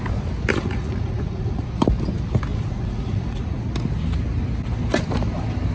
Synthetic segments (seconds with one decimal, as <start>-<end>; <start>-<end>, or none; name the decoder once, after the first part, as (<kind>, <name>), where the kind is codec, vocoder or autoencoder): 0.5-1.7 (vocoder, Vocos); 2.5-3.6

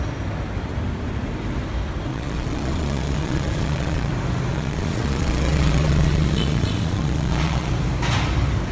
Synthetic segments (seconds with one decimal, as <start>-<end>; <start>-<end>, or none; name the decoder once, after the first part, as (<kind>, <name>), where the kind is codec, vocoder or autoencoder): 2.1-4.1 (vocoder, Vocos); 4.5-7.7

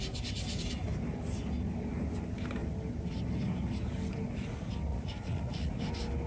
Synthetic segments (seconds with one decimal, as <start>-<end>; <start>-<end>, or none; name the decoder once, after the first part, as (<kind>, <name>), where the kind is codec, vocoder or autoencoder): 4.9-5.7 (vocoder, Vocos)

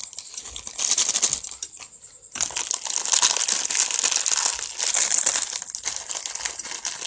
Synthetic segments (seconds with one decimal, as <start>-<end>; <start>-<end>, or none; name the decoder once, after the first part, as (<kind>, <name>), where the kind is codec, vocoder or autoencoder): none

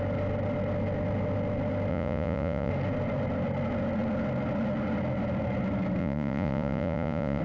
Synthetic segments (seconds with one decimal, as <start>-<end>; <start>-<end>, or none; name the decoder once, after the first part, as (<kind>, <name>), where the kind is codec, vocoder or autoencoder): 1.9-2.7 (vocoder, Vocos); 6.0-7.4

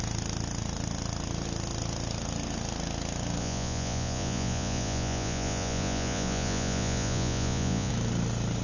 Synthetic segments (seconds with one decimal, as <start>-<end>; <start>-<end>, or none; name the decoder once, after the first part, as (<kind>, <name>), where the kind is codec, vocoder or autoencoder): 3.4-7.9 (vocoder, Vocos)

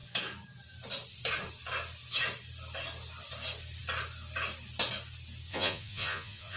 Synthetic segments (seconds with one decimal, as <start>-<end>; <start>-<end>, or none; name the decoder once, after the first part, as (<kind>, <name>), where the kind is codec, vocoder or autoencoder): 5.5-6.6 (vocoder, Vocos)

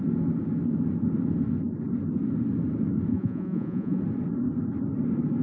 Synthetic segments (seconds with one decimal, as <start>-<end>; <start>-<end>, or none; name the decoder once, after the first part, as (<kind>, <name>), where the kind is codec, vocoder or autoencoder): 3.1-4.0 (vocoder, Vocos)